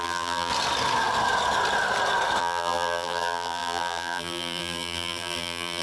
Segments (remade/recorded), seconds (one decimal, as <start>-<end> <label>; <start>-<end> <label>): 0.0-0.5 remade; 0.5-2.4 recorded; 2.4-5.8 remade